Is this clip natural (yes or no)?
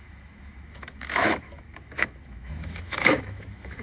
no